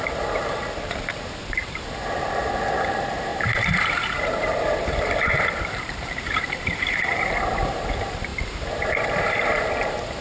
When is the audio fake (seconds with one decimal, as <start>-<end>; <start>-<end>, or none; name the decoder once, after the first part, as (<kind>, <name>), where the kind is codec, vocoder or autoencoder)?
0.0-10.2 (vocoder, BigVGAN v2)